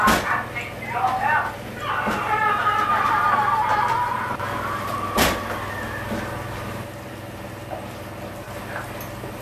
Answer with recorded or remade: recorded